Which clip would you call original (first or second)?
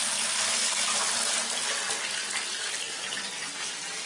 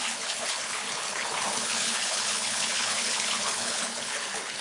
first